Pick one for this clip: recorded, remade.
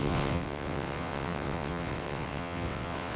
remade